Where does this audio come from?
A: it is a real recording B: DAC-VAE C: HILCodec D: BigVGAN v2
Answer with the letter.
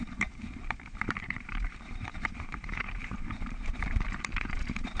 D